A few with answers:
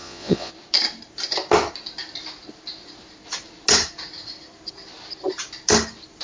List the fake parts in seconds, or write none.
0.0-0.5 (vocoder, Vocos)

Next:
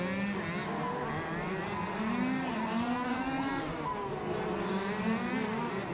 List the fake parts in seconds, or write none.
none

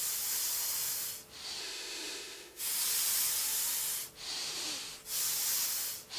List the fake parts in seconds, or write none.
1.6-2.6 (autoencoder, DAC-VAE)

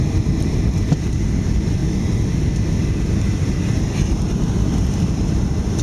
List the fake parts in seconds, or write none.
0.0-1.8 (vocoder, BigVGAN v2); 3.5-5.8

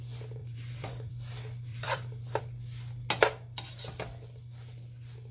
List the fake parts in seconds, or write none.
0.4-1.1 (vocoder, BigVGAN v2); 1.7-2.4

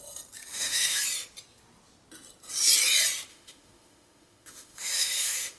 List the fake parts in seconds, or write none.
0.5-1.0 (autoencoder, DAC-VAE); 3.3-5.6

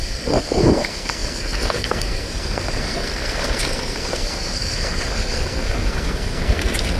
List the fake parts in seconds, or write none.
0.0-7.0 (codec, SNAC)